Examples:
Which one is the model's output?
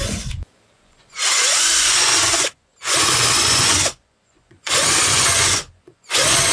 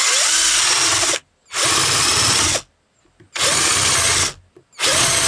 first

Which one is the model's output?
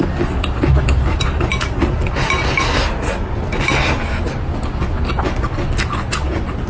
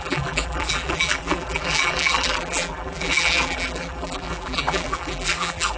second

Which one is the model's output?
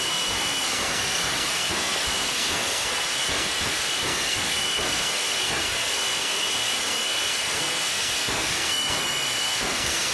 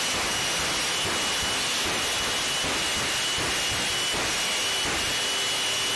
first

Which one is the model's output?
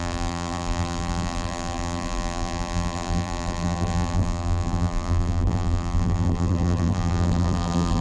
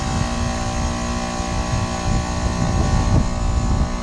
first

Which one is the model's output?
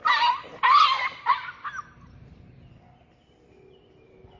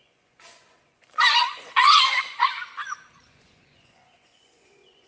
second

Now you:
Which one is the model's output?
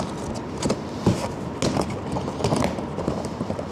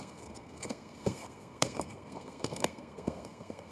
second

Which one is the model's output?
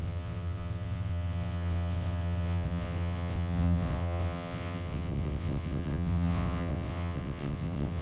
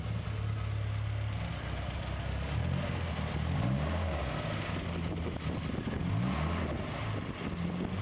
first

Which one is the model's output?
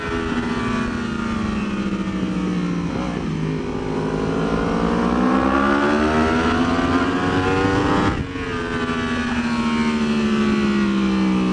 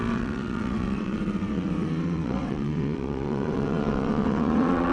second